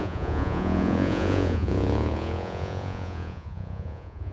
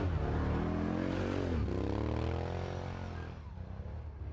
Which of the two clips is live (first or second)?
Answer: second